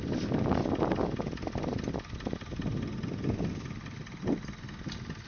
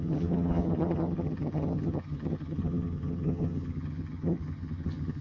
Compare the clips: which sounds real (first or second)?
first